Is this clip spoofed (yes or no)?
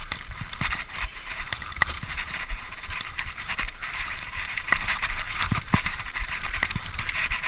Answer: yes